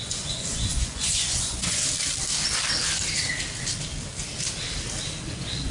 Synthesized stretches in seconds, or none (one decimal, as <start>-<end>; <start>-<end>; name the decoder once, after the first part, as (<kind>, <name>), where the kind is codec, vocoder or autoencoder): 0.0-1.8 (vocoder, Vocos); 5.2-5.7